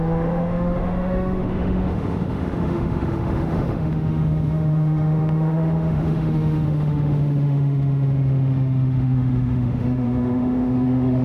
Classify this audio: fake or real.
fake